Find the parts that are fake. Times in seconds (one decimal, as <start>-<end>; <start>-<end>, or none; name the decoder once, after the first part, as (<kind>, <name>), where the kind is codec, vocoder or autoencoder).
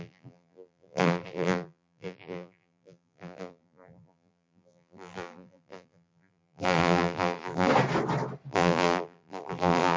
0.0-7.7 (vocoder, BigVGAN v2); 8.5-10.0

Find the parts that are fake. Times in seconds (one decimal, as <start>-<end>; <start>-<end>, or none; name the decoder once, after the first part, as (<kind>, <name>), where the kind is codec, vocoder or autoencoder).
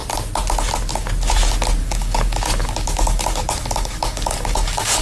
1.8-5.0 (codec, DAC)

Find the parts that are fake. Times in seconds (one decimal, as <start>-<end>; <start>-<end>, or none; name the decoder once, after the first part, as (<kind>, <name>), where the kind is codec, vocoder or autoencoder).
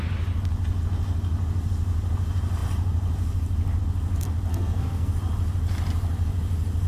4.5-5.1 (codec, SNAC)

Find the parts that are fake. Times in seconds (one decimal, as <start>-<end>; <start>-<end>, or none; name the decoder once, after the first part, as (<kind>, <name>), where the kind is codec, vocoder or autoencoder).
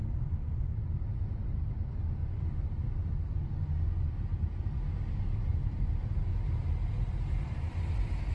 0.0-0.6 (vocoder, BigVGAN v2); 2.2-3.1; 4.3-5.5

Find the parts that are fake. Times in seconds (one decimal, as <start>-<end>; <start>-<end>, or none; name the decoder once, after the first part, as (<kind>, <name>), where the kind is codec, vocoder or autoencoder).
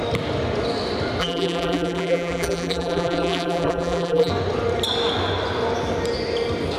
1.2-4.3 (vocoder, BigVGAN v2)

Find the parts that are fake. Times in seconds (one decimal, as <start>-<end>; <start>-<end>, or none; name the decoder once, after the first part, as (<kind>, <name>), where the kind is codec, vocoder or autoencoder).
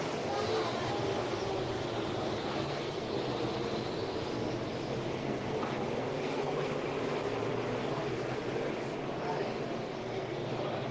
2.4-3.1 (codec, SNAC); 5.2-6.8; 7.8-8.4; 10.0-10.5